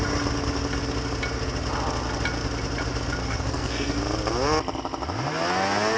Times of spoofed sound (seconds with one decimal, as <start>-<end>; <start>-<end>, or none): 3.2-4.0